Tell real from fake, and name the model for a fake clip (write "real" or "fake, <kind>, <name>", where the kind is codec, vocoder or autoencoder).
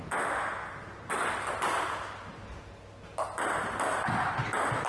real